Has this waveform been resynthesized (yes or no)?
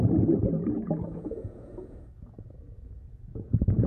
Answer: yes